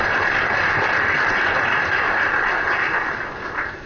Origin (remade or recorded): remade